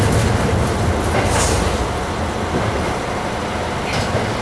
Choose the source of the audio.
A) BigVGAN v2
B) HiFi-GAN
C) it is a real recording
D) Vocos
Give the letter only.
C